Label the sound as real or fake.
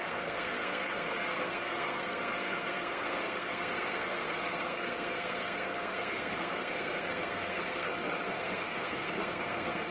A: fake